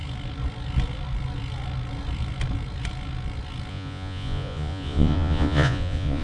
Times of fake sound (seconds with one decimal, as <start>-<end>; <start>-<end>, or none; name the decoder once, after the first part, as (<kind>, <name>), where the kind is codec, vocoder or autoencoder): 3.7-6.2 (vocoder, Vocos)

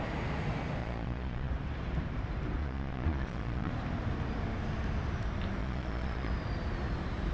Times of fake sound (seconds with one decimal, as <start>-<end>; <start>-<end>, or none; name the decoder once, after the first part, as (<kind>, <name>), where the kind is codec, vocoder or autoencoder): 0.8-1.5 (vocoder, Vocos); 2.6-3.7; 5.6-6.3

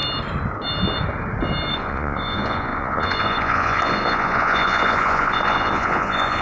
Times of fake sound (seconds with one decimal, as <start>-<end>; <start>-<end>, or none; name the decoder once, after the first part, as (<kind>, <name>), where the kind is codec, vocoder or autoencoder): 1.7-6.4 (vocoder, Vocos)

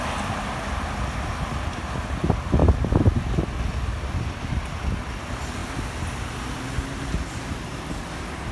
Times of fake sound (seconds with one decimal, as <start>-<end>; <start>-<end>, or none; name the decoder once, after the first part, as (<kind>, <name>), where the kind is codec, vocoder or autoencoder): none

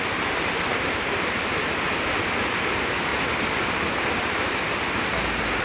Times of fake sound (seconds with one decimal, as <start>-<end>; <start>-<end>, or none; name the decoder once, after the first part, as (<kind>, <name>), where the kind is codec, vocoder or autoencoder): none

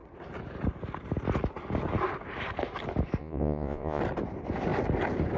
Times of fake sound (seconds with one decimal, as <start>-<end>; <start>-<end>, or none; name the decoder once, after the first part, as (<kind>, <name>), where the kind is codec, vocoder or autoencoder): 3.2-4.0 (vocoder, Vocos)